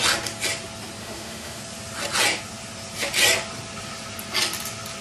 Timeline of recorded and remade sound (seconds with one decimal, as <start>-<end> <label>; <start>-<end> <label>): 0.0-1.0 recorded; 1.0-1.6 remade; 1.6-5.0 recorded